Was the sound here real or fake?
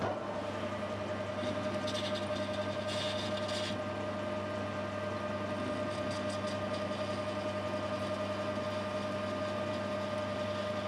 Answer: real